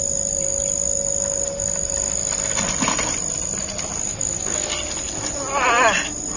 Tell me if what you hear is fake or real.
real